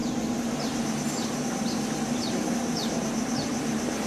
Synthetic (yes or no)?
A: no